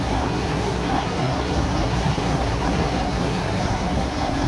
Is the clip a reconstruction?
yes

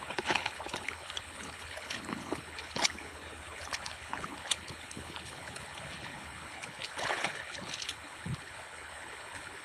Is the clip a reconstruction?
yes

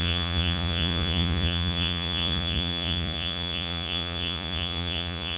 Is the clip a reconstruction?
yes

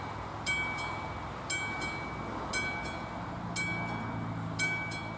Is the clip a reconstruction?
no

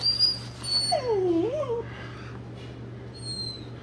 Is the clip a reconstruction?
no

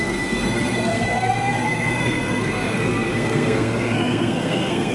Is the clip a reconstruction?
yes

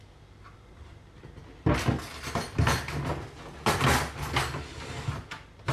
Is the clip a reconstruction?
no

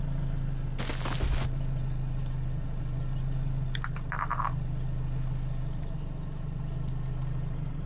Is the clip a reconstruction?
no